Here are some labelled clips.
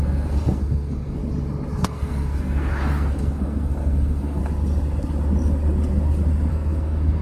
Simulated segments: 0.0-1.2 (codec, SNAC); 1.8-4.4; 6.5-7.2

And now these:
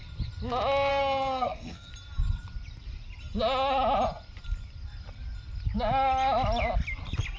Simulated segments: 0.9-1.9 (codec, SNAC)

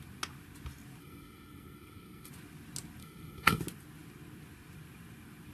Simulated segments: 1.0-2.3 (codec, SNAC); 3.0-3.6

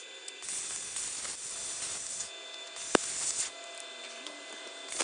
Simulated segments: none

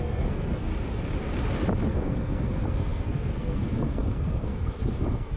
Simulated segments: 0.0-0.7 (codec, SNAC); 1.9-5.4

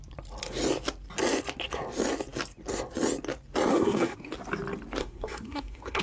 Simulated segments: 3.7-4.3 (codec, SNAC); 5.0-6.0

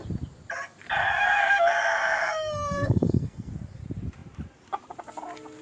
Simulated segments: 1.0-3.5 (codec, SNAC)

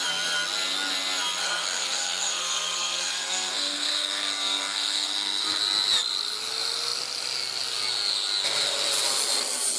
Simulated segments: 1.4-5.6 (codec, SNAC)